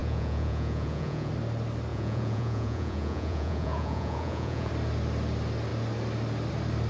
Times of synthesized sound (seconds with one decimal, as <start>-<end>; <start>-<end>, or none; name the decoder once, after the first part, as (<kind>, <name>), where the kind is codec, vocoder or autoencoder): 0.0-1.3 (vocoder, Vocos); 1.9-4.7